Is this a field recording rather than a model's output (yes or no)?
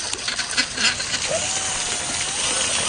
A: yes